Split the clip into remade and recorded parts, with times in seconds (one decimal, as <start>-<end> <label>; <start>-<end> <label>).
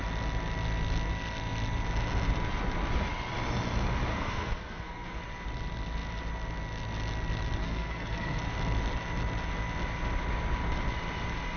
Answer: 0.0-4.1 recorded; 4.1-5.2 remade; 5.2-7.6 recorded; 7.6-8.4 remade; 8.4-11.6 recorded